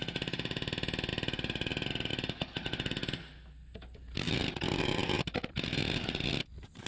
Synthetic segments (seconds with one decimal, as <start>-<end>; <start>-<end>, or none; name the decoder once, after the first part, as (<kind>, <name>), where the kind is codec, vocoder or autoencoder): 1.1-1.7 (vocoder, BigVGAN v2)